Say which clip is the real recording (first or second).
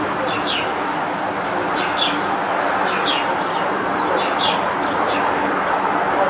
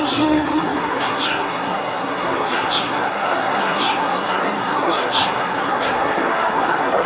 first